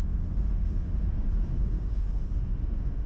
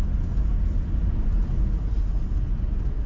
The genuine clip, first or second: second